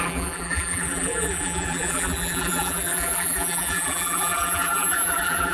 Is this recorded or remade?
remade